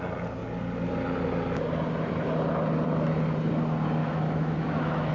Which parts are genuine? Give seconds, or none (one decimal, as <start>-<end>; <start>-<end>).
0.0-4.0